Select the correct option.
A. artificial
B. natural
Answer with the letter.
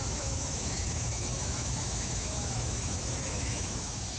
A